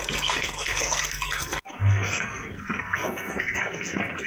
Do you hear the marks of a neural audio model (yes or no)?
yes